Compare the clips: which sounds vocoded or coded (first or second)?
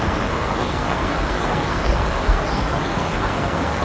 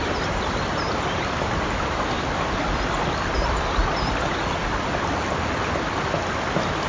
first